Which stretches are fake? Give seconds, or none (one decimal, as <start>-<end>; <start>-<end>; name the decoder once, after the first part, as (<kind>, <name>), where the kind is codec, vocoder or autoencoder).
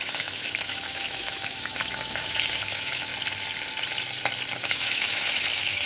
0.0-3.1 (autoencoder, DAC-VAE); 4.6-5.9